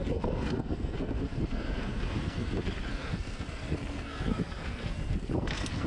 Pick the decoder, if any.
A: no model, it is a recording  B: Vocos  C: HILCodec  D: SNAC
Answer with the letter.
D